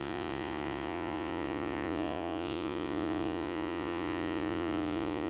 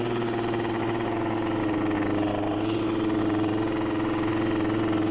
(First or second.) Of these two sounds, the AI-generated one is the first